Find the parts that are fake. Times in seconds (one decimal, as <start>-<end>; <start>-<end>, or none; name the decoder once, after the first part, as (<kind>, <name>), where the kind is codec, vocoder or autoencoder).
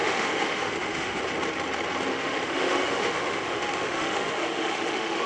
0.0-1.2 (autoencoder, DAC-VAE); 2.1-5.3